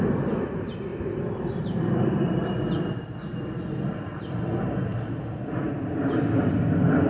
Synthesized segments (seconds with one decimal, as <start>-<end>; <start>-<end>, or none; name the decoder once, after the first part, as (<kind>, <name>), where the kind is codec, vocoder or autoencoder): 0.9-3.0 (vocoder, BigVGAN v2)